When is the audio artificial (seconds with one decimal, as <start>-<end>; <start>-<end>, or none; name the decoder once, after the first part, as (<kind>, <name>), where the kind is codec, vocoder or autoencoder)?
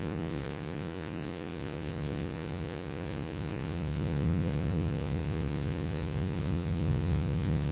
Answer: 0.0-7.7 (vocoder, Vocos)